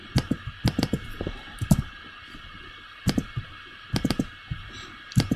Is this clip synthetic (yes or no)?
yes